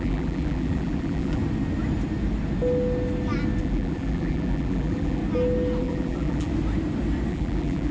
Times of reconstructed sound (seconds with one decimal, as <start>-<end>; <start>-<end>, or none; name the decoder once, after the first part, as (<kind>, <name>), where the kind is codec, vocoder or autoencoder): 0.0-1.4 (vocoder, BigVGAN v2); 3.6-5.2; 5.8-6.5; 7.3-7.9